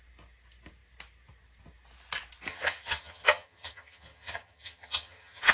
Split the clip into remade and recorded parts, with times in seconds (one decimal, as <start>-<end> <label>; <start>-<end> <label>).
0.0-2.5 recorded; 2.5-5.5 remade